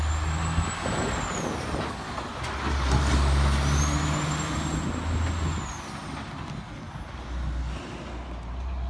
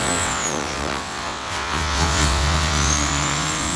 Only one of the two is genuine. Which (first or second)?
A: first